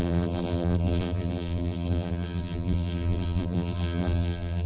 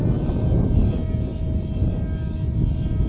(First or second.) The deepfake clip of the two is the first